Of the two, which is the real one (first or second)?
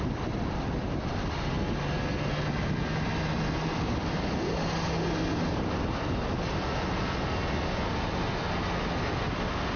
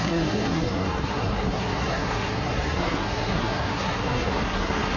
first